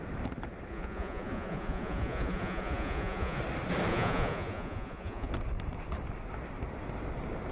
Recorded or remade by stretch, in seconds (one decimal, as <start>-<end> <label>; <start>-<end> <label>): 0.0-0.7 recorded; 0.7-3.4 remade; 3.4-3.9 recorded; 3.9-5.3 remade; 5.3-7.5 recorded